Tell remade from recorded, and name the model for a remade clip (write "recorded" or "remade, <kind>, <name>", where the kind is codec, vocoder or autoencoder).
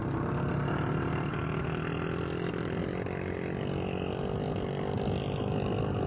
recorded